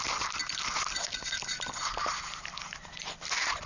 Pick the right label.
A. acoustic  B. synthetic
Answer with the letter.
A